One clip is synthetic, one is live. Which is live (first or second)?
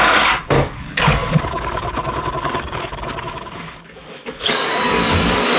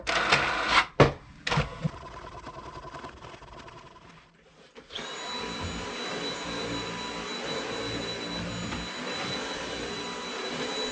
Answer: second